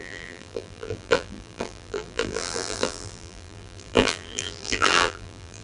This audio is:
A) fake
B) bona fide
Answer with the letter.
A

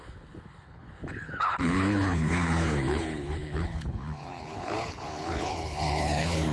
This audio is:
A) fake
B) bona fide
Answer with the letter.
A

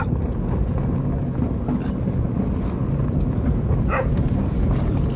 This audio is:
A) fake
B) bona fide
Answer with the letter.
B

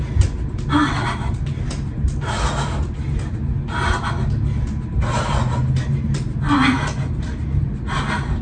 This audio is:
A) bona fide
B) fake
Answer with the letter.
A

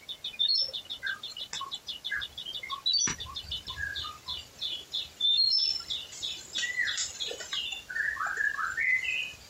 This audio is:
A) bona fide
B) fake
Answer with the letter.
A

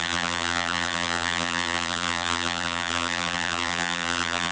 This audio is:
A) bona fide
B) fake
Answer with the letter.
B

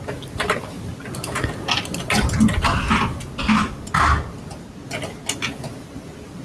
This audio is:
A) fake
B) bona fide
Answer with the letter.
B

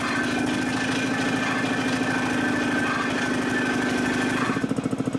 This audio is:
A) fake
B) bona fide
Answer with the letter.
B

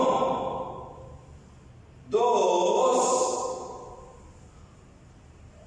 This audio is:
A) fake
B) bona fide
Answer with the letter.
B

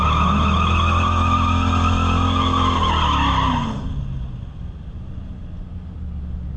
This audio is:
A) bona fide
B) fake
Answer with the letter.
A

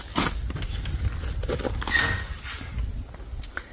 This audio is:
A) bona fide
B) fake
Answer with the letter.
A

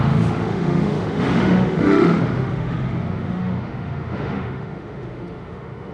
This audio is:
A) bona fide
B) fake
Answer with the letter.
B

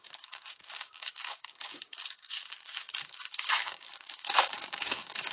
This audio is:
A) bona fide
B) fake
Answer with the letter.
B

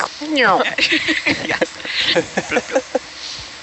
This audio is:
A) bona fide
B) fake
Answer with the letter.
A